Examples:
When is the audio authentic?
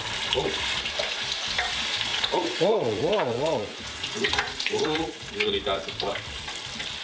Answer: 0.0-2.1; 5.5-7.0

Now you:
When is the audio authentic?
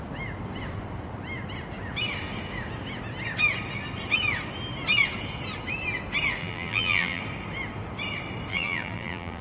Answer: 0.0-6.4; 7.2-8.5